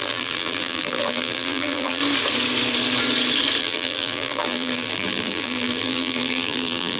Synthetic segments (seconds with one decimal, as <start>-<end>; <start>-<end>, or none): 0.0-2.0; 3.6-7.0